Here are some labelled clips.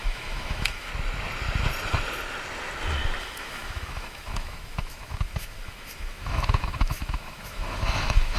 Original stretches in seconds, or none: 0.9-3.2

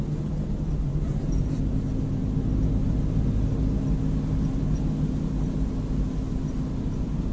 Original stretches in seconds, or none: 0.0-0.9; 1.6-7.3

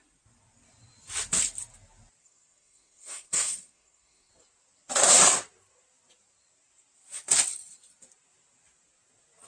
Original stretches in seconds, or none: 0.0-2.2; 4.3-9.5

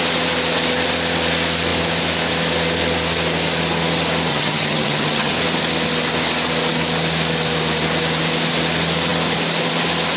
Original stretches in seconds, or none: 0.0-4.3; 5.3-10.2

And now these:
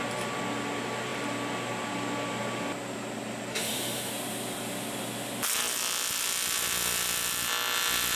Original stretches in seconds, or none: 0.0-3.5; 4.1-8.2